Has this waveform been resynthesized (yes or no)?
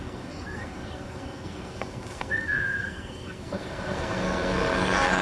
yes